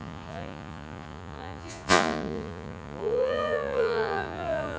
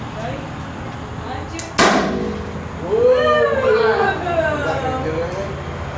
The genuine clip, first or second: second